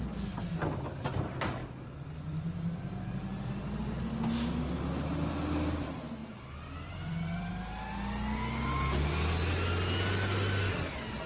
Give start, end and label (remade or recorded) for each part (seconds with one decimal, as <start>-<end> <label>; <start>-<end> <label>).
0.0-6.2 recorded; 6.2-7.5 remade; 7.5-11.3 recorded